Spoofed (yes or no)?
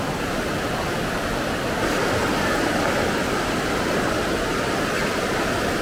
no